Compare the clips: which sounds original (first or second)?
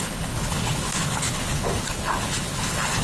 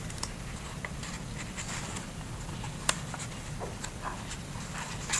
second